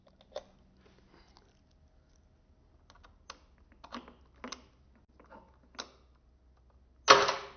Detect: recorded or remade recorded